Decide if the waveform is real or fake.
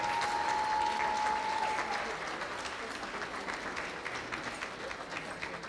real